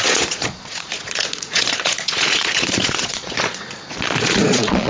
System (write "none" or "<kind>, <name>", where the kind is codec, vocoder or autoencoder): vocoder, Vocos